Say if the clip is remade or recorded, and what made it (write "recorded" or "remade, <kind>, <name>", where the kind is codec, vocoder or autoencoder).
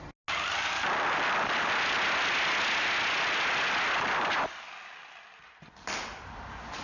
recorded